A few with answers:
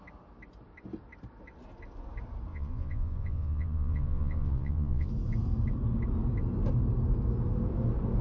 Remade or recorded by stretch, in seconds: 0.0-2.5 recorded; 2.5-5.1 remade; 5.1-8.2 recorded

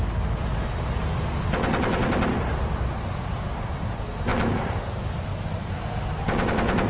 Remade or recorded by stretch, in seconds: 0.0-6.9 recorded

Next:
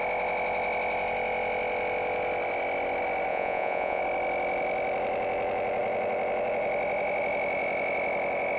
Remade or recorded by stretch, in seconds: 0.0-3.3 recorded; 3.3-4.0 remade; 4.0-8.6 recorded

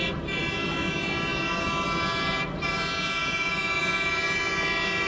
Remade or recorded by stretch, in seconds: 0.0-5.1 recorded

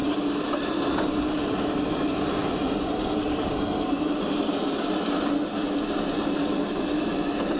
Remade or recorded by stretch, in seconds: 0.0-7.6 recorded